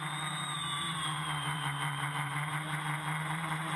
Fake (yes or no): yes